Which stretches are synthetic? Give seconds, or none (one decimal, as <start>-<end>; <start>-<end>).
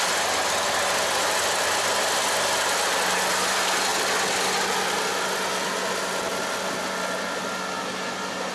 none